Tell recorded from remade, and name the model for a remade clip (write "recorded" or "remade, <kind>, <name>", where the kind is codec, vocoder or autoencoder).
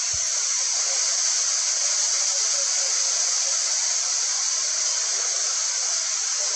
recorded